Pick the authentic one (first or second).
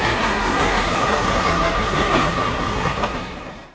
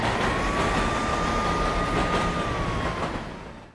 second